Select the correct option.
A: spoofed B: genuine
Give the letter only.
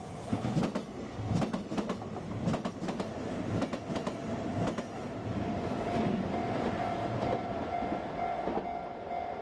B